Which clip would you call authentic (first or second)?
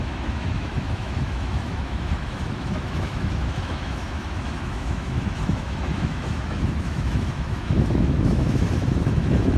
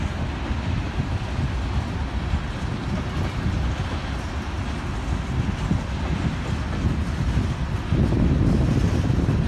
second